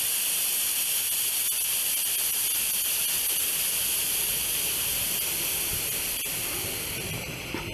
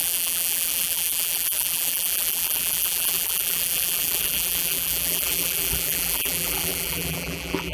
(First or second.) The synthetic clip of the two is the second